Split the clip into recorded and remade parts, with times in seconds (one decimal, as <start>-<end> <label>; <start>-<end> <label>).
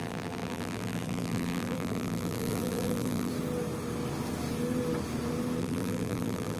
0.0-3.3 remade; 3.3-5.6 recorded; 5.6-6.6 remade